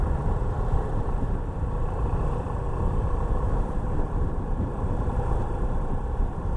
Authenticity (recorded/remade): remade